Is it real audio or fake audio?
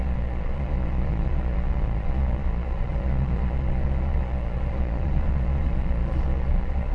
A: fake